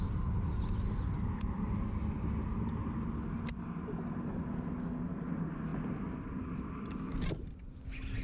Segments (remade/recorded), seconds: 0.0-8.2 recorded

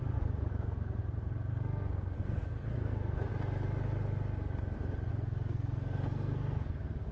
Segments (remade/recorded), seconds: 0.0-1.0 remade; 1.0-1.5 recorded; 1.5-3.3 remade; 3.3-5.1 recorded; 5.1-7.1 remade

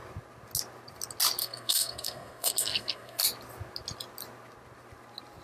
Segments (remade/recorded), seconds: 0.0-1.4 recorded; 1.4-3.2 remade; 3.2-5.4 recorded